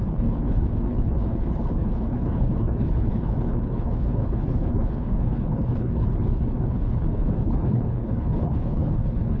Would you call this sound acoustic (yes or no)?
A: no